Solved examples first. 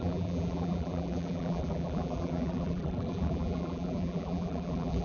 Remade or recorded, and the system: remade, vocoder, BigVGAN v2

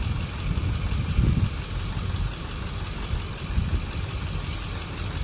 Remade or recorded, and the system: recorded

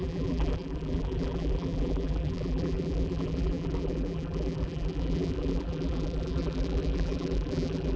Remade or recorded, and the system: remade, vocoder, BigVGAN v2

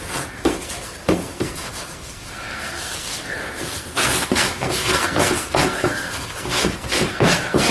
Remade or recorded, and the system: remade, codec, SNAC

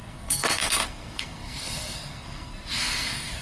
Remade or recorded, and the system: remade, codec, SNAC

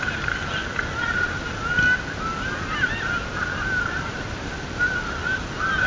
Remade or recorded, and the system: recorded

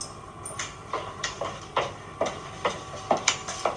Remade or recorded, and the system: recorded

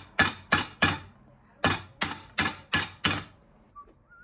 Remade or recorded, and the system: recorded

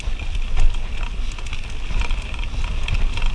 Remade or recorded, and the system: recorded